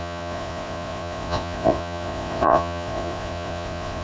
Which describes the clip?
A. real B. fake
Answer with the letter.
B